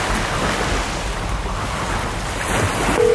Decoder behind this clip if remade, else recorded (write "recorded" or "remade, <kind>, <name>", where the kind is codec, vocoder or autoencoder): recorded